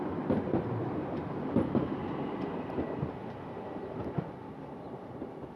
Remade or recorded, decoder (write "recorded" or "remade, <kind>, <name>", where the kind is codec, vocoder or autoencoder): recorded